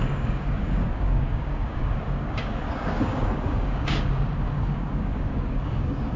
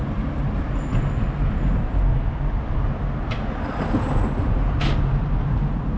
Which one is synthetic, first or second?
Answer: first